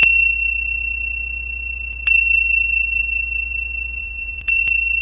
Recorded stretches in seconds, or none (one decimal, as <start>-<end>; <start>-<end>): 0.0-4.0; 4.6-5.0